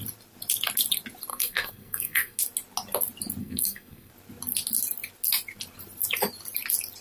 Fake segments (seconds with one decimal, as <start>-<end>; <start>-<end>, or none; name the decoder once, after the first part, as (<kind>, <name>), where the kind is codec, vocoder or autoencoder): 1.3-2.4 (codec, SNAC); 3.4-4.1